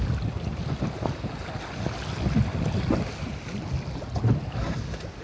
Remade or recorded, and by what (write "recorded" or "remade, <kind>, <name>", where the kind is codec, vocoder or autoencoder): recorded